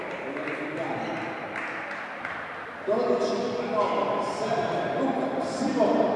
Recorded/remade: recorded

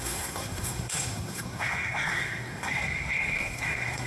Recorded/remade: remade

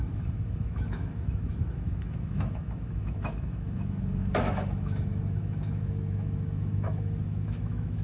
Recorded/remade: remade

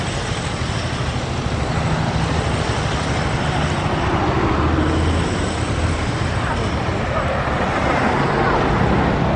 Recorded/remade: recorded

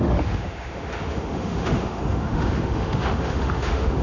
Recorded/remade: remade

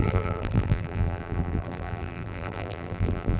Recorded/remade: remade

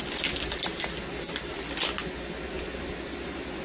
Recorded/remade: recorded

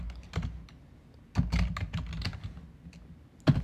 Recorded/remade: recorded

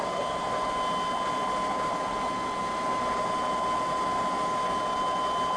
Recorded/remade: recorded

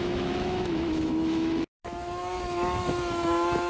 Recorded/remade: remade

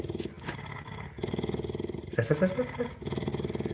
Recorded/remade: recorded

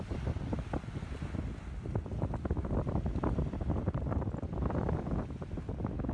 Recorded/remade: recorded